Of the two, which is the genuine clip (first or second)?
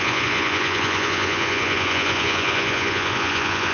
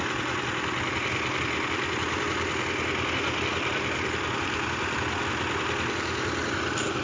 second